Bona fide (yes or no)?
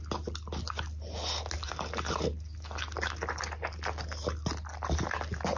yes